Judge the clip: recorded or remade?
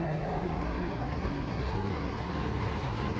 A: remade